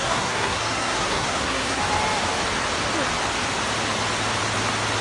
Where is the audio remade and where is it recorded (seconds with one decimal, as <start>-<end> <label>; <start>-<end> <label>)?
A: 0.0-1.8 remade; 1.8-5.0 recorded

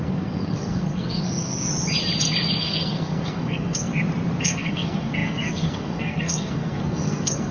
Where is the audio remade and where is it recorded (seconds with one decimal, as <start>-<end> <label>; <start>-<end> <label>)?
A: 0.0-1.7 remade; 1.7-2.6 recorded; 2.6-3.9 remade; 3.9-4.4 recorded; 4.4-7.5 remade

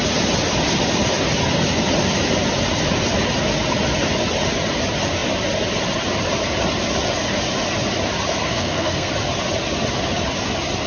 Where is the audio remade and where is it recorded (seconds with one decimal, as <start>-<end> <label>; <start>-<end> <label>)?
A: 0.0-8.4 recorded; 8.4-9.1 remade; 9.1-10.9 recorded

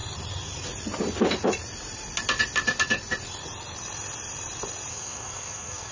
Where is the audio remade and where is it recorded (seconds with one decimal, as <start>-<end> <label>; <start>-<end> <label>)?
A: 0.0-4.9 recorded; 4.9-5.9 remade

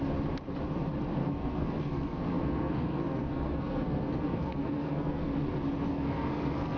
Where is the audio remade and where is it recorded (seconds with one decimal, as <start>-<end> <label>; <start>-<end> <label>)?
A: 0.0-1.2 recorded; 1.2-5.3 remade; 5.3-5.9 recorded; 5.9-6.8 remade

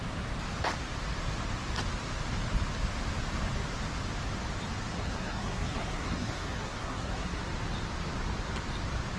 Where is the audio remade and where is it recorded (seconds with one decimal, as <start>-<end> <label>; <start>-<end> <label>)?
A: 0.0-4.8 recorded; 4.8-7.4 remade; 7.4-9.2 recorded

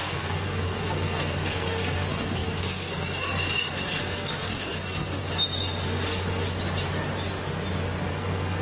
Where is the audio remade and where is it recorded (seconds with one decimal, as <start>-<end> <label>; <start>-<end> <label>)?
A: 0.0-5.2 remade; 5.2-8.1 recorded; 8.1-8.6 remade